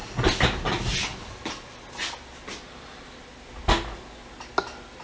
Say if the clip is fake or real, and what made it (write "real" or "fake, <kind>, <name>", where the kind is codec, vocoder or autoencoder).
real